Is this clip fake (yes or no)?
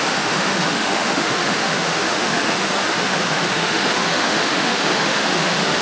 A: yes